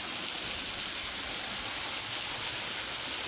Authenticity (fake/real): real